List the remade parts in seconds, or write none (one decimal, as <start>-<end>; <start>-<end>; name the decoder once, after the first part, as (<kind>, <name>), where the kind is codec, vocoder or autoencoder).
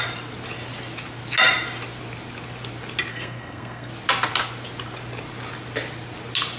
3.1-3.9 (codec, SNAC)